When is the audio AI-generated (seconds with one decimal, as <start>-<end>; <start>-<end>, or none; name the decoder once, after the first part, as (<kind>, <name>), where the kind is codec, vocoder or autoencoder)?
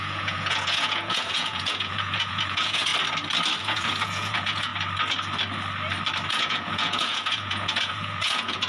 0.0-2.9 (vocoder, Vocos); 3.6-4.7; 6.3-8.7